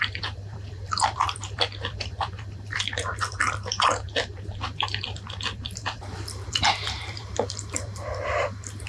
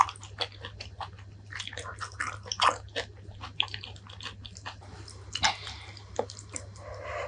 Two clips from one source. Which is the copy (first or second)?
first